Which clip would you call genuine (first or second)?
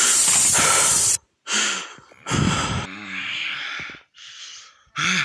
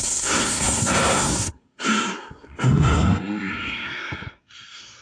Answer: first